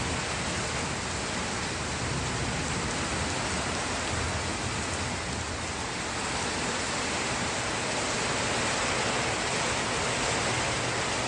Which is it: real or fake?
real